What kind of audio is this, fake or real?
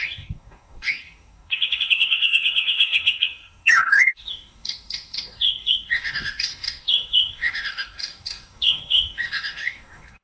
fake